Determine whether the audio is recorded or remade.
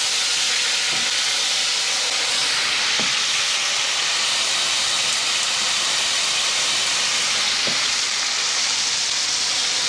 recorded